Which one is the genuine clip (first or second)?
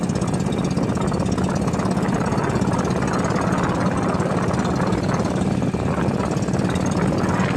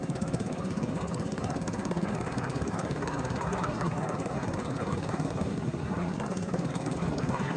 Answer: first